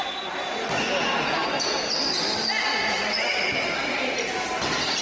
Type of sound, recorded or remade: recorded